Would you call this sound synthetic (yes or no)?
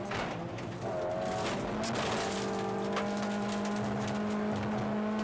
no